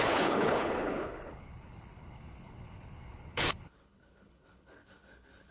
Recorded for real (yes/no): no